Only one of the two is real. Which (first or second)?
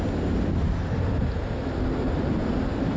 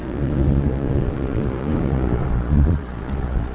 first